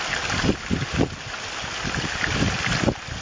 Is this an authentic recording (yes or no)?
yes